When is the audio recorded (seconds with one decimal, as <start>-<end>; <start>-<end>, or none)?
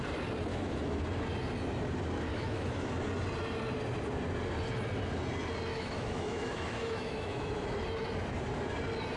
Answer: 0.0-0.5; 1.0-2.3; 2.9-5.7; 7.5-9.2